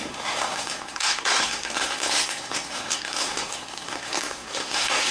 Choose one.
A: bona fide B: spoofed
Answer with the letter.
B